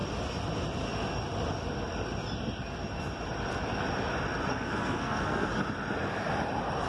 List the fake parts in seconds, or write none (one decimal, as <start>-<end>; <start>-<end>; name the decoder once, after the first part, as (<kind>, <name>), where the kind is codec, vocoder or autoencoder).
4.5-5.5 (codec, SNAC)